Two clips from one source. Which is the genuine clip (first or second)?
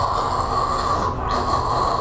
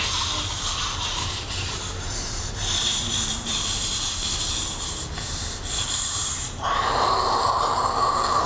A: first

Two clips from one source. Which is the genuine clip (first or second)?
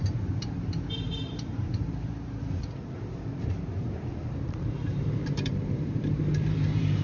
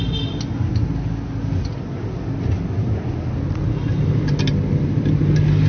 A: second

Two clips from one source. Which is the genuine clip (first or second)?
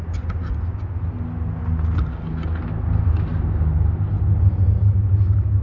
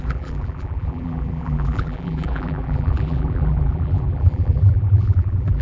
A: first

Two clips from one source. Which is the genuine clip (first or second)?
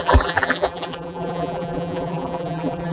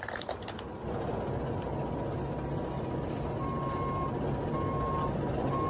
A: second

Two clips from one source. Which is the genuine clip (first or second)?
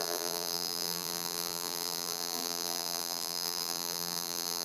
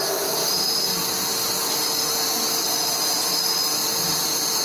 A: second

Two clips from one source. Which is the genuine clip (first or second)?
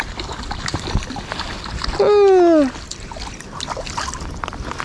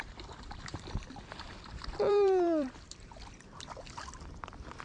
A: first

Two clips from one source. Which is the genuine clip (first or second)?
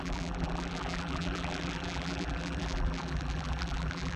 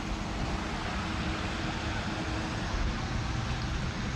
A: second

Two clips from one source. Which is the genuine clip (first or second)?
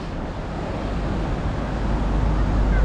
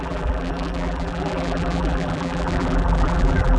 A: first